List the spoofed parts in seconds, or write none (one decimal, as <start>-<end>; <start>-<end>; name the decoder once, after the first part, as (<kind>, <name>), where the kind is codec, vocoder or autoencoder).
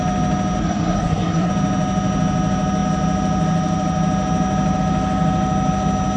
0.6-1.5 (codec, SNAC)